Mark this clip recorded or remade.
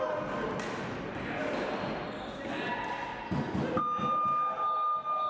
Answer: recorded